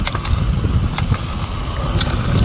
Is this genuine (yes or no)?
yes